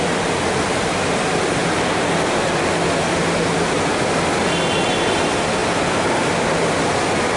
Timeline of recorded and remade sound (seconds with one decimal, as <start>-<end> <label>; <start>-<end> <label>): 0.0-1.6 remade; 1.6-4.4 recorded; 4.4-7.4 remade